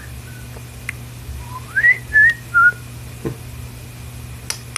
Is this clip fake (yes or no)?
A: no